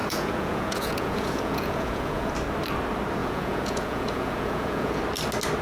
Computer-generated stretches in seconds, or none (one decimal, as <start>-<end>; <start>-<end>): 0.0-2.3; 3.2-5.0